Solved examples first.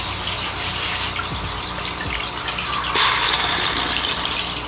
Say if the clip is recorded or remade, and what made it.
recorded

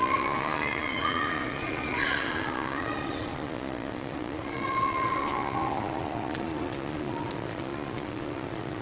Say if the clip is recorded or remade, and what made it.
remade, vocoder, Vocos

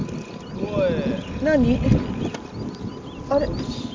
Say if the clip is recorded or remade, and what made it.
recorded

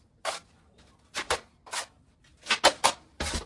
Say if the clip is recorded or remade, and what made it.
recorded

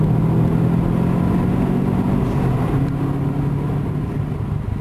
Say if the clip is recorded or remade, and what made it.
recorded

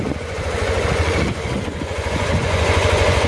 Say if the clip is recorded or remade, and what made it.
remade, vocoder, Vocos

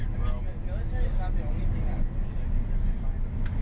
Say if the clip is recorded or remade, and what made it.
recorded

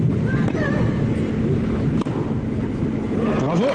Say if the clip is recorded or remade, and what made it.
recorded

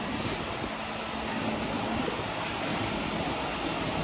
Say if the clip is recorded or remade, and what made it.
recorded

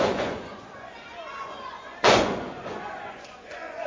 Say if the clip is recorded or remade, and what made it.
remade, vocoder, Vocos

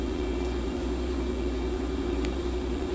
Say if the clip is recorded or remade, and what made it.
remade, vocoder, Vocos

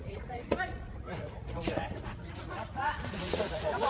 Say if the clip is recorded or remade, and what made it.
remade, vocoder, Vocos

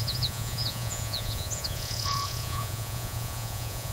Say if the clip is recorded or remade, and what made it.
remade, vocoder, Vocos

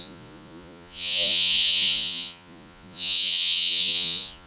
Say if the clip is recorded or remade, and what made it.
remade, vocoder, Vocos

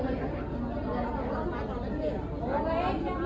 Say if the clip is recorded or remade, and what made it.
recorded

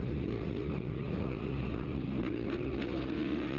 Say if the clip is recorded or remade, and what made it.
remade, vocoder, Vocos